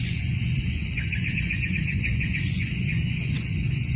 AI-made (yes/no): yes